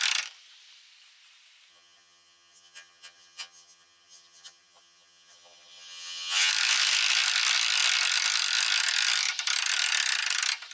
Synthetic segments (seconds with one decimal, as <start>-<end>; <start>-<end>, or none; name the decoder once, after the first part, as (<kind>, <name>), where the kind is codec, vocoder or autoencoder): 1.7-6.5 (vocoder, HiFi-GAN)